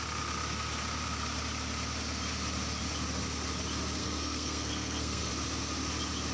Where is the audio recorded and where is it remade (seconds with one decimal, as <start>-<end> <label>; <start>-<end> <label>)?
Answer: 0.0-4.0 recorded; 4.0-5.3 remade; 5.3-6.3 recorded